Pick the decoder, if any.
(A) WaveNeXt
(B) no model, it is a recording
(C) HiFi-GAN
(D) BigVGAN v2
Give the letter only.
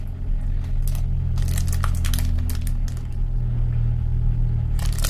B